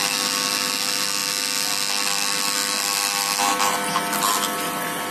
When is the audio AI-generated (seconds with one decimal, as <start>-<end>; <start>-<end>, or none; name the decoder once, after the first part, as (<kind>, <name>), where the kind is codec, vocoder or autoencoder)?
none